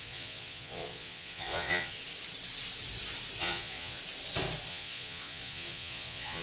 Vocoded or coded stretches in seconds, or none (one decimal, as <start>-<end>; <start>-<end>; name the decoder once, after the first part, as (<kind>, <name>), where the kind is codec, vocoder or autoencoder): 0.0-2.0 (vocoder, Vocos); 3.4-4.0; 4.7-6.4